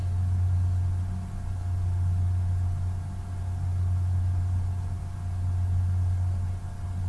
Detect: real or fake real